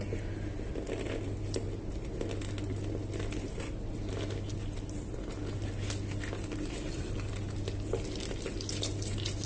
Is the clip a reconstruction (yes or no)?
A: no